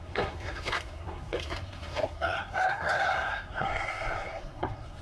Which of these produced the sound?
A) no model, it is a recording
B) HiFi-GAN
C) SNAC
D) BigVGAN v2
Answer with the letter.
C